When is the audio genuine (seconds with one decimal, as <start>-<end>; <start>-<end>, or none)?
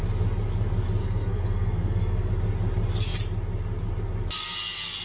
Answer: 0.0-1.0; 2.3-5.0